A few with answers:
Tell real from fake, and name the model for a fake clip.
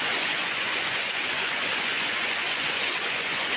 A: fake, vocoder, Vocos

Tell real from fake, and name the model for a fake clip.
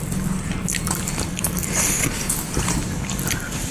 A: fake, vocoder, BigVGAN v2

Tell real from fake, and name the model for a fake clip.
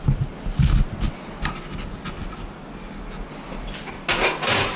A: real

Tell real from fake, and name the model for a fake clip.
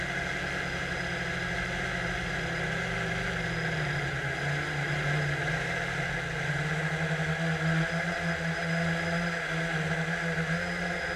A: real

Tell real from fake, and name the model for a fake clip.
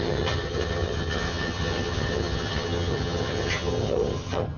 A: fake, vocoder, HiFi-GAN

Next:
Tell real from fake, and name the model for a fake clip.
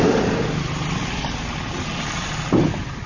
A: real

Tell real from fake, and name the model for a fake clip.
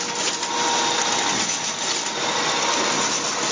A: real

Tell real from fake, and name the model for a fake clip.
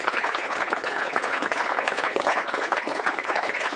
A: fake, codec, HILCodec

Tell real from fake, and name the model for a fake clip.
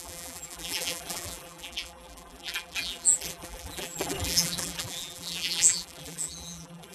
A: fake, vocoder, BigVGAN v2